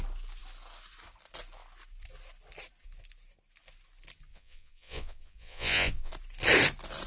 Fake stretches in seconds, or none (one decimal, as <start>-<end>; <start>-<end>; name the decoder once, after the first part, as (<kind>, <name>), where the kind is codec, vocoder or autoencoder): 4.3-6.1 (vocoder, Vocos)